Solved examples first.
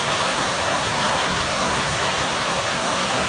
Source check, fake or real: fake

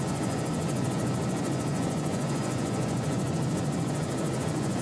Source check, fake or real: fake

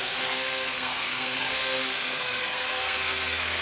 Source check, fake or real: fake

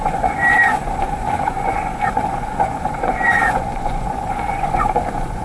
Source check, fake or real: fake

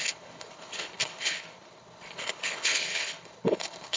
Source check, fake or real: fake